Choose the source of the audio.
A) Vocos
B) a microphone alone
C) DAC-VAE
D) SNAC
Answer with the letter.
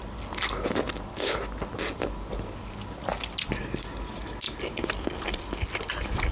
B